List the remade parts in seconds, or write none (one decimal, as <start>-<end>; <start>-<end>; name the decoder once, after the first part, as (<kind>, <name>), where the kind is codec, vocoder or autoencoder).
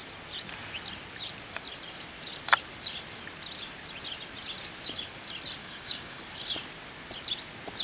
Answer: 5.6-6.2 (codec, DAC)